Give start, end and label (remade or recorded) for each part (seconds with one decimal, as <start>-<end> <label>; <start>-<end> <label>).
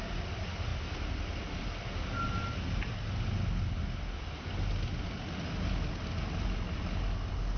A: 0.0-7.6 recorded